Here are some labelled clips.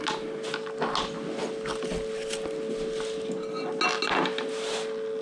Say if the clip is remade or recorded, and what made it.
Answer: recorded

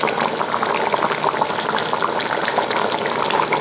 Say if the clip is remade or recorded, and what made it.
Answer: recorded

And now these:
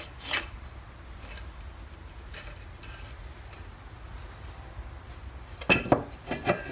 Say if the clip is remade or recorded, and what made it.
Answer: recorded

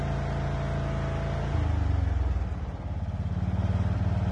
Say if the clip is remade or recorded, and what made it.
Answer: recorded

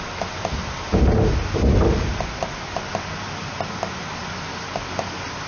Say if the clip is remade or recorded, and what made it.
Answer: recorded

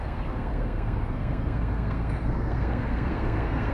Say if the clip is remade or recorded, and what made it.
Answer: remade, codec, SNAC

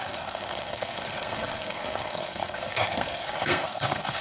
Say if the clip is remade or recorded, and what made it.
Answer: remade, codec, SNAC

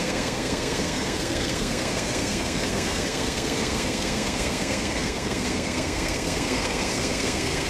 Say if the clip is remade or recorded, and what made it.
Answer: remade, codec, SNAC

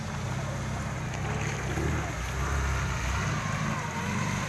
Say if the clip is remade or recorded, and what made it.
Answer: recorded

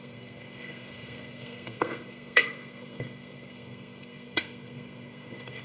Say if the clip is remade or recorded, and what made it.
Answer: remade, codec, SNAC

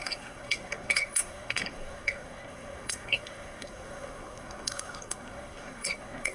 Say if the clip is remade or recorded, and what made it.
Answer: remade, codec, SNAC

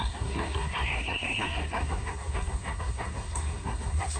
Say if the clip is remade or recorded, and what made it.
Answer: remade, codec, SNAC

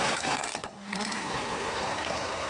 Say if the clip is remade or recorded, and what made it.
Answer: remade, codec, SNAC